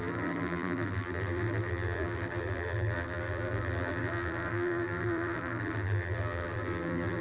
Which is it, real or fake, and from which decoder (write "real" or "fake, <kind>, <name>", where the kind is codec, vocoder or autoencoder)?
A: fake, vocoder, BigVGAN v2